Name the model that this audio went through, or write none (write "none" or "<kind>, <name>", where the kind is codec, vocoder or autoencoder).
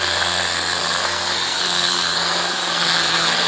codec, SNAC